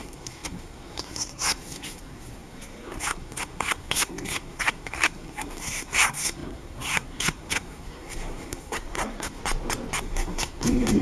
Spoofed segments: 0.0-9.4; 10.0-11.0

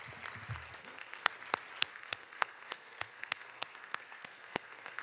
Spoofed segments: 0.8-1.3; 1.9-5.0

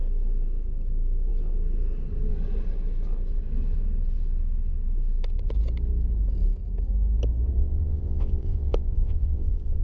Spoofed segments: 7.6-9.8

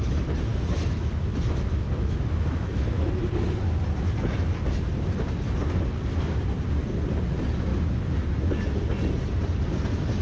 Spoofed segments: 0.5-3.2